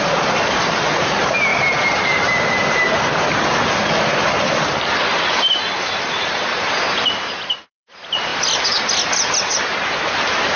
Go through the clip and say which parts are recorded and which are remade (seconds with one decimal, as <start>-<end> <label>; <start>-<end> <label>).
0.0-1.5 remade; 1.5-5.2 recorded; 5.2-8.3 remade; 8.3-10.6 recorded